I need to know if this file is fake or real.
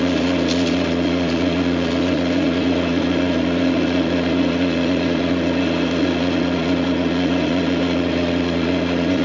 fake